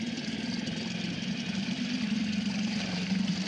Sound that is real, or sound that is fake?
fake